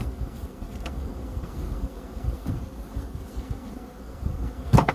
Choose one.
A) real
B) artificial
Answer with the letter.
B